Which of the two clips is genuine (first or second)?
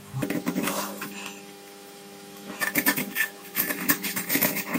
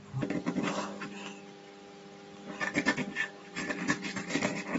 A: second